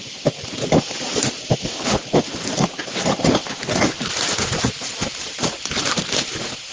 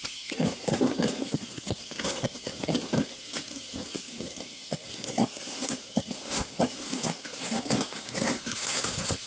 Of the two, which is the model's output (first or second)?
second